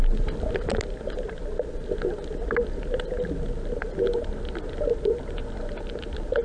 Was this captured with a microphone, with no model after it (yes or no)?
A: yes